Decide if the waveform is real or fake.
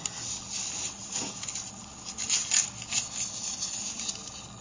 real